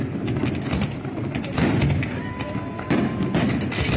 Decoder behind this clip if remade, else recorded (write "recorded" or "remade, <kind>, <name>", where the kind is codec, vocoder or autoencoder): recorded